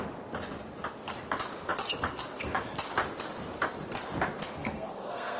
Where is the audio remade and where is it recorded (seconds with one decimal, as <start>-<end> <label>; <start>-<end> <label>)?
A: 0.0-4.6 recorded; 4.6-5.4 remade